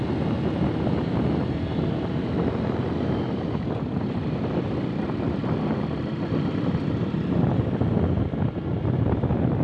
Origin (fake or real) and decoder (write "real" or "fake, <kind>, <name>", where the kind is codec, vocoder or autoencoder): real